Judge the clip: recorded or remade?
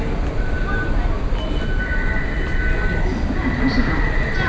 recorded